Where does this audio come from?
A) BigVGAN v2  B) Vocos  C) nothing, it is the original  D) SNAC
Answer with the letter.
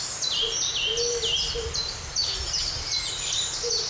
C